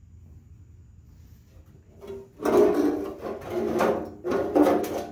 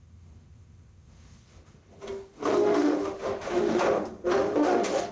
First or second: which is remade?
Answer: second